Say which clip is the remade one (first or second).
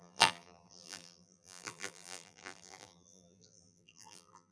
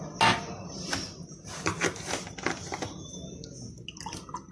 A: first